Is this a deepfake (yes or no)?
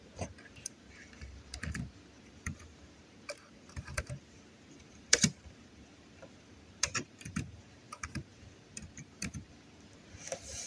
yes